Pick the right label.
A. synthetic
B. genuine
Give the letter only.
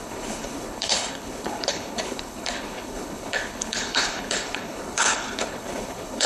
A